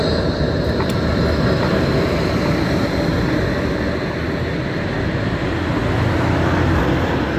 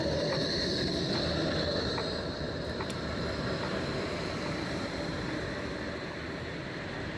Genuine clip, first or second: first